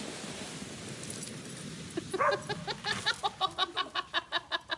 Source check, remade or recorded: recorded